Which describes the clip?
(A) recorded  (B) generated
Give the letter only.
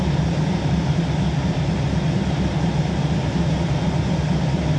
A